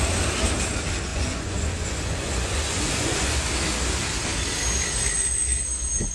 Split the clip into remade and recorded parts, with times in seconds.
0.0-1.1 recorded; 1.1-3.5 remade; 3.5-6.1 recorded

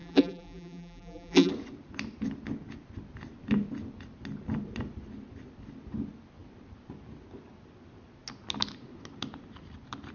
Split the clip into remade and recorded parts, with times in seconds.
0.0-1.5 remade; 1.5-10.1 recorded

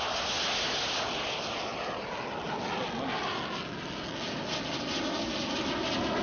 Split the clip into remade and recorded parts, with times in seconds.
0.0-6.2 recorded

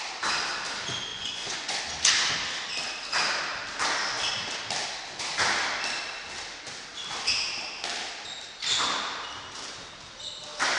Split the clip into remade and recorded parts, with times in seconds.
0.0-1.1 recorded; 1.1-1.8 remade; 1.8-10.8 recorded

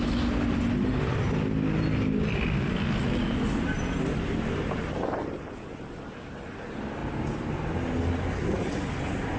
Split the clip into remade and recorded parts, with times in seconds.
0.0-9.4 recorded

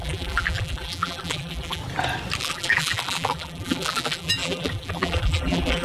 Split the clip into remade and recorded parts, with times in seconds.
0.0-1.8 remade; 1.8-2.4 recorded; 2.4-5.8 remade

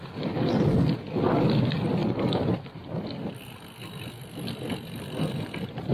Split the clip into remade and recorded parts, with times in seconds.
0.0-5.9 recorded